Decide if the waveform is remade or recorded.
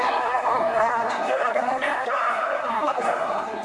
remade